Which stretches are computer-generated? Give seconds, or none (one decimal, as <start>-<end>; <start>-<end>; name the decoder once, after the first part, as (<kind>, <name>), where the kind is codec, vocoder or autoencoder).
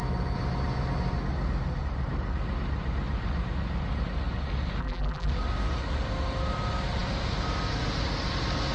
4.8-5.3 (vocoder, BigVGAN v2)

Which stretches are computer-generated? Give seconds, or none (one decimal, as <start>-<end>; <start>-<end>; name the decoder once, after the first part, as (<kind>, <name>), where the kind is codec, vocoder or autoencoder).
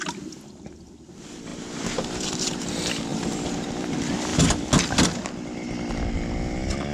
1.5-2.6 (vocoder, BigVGAN v2); 3.1-3.7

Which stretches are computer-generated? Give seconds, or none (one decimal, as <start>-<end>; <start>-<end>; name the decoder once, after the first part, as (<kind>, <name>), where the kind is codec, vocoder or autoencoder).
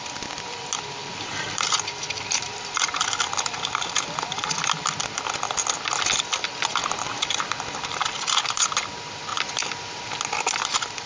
1.0-4.0 (vocoder, BigVGAN v2); 6.8-8.5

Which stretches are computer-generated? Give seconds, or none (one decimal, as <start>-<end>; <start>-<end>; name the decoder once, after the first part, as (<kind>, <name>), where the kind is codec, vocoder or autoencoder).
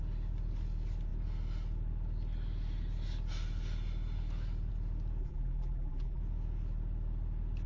5.2-6.2 (vocoder, BigVGAN v2)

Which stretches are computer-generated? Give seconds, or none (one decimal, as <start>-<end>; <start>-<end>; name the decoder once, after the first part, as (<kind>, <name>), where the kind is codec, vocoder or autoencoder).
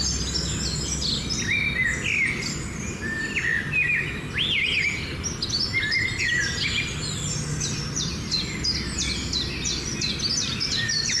none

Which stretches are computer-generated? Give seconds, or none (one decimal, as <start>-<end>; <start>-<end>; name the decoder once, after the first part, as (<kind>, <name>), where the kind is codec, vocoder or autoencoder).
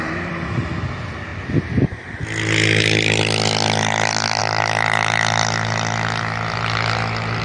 none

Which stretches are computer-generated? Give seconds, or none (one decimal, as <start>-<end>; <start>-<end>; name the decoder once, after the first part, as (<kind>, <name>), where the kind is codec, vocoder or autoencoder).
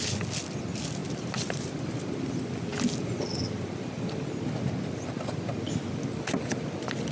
1.0-2.1 (vocoder, BigVGAN v2)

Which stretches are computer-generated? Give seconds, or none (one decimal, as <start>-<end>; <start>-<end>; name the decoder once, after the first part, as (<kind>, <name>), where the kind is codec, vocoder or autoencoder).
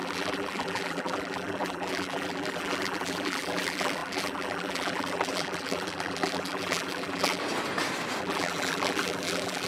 0.0-7.4 (vocoder, BigVGAN v2); 8.2-9.7